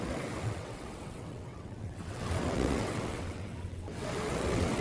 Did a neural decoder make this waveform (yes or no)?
yes